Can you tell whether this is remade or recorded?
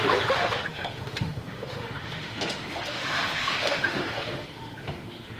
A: remade